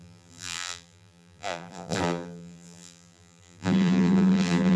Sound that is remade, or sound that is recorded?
remade